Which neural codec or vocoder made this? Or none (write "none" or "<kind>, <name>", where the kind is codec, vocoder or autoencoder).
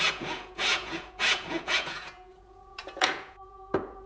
vocoder, Vocos